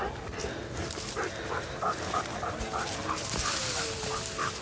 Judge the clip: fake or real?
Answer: real